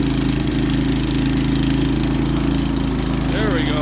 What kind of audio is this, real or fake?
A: real